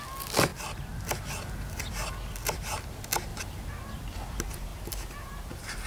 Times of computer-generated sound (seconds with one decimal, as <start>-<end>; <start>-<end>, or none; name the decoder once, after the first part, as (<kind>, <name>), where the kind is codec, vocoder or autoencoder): 3.3-4.0 (vocoder, BigVGAN v2); 4.7-5.9